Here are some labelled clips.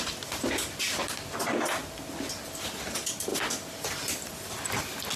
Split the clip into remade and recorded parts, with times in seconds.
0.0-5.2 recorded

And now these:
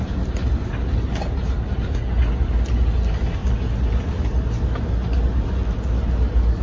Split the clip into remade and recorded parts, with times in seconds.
0.0-6.6 recorded

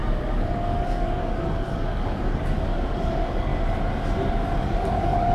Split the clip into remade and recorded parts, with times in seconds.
0.0-3.5 remade; 3.5-4.3 recorded; 4.3-5.3 remade